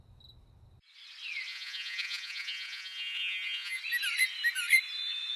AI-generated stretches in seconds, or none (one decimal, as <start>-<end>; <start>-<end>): 1.5-3.8